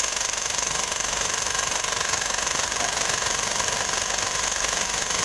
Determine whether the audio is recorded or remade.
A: remade